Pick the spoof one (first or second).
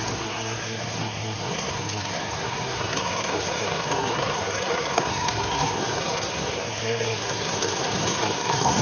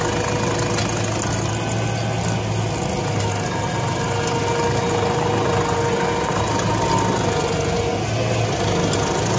first